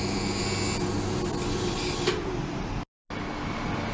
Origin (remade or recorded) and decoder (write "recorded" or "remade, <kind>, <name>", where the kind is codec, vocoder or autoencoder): recorded